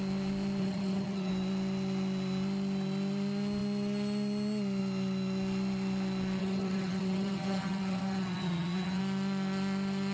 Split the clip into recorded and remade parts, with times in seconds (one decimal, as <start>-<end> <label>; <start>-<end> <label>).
0.0-0.6 recorded; 0.6-1.3 remade; 1.3-6.4 recorded; 6.4-9.0 remade; 9.0-10.1 recorded